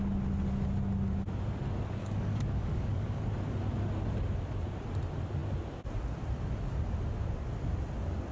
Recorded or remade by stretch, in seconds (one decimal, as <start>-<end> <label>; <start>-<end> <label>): 0.0-2.0 recorded; 2.0-3.2 remade; 3.2-8.3 recorded